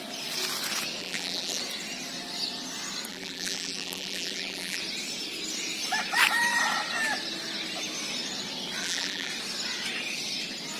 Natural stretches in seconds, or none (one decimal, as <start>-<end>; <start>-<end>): 0.0-1.0; 1.6-3.1; 4.8-8.8; 9.3-10.8